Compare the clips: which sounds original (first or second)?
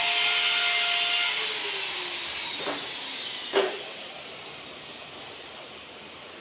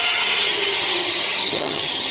first